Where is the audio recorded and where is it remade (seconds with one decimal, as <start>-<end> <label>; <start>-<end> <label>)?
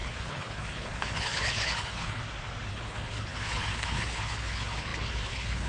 0.0-2.2 remade; 2.2-2.7 recorded; 2.7-5.7 remade